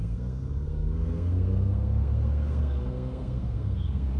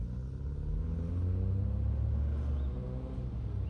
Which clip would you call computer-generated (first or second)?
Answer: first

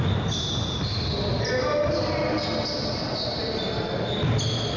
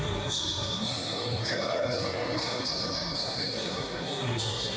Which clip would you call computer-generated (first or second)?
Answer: second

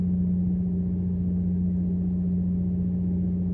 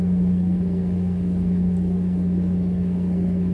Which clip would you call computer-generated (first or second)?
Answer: second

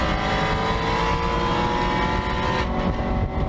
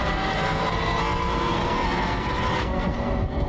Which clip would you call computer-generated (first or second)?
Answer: second